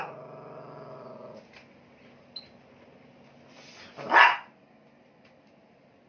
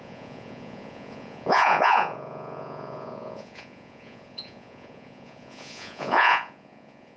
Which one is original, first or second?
first